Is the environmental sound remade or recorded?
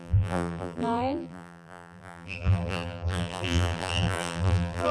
remade